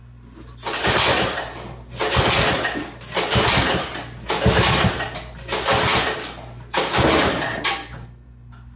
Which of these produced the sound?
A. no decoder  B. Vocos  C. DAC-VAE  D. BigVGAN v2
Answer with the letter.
A